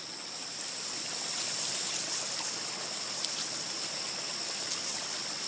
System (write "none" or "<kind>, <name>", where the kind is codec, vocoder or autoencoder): none